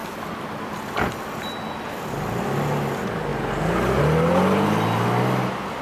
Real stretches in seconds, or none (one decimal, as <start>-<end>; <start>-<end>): 0.0-5.8